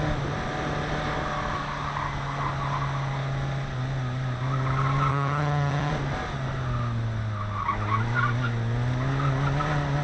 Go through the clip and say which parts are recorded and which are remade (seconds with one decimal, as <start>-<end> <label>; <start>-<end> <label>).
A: 0.0-5.1 recorded; 5.1-5.9 remade; 5.9-10.0 recorded